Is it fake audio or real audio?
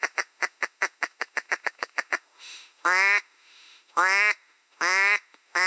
fake